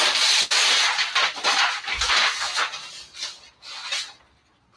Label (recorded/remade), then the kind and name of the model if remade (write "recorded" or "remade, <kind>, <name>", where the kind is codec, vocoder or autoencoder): recorded